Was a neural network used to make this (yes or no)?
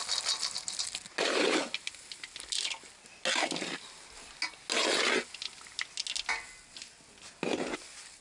no